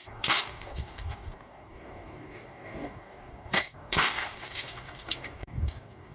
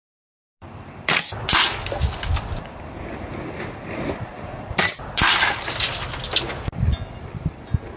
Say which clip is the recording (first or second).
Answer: second